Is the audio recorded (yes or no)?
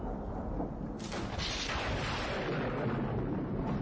yes